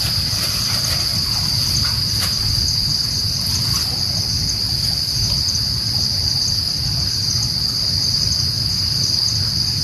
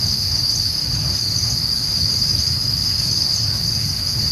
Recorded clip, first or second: first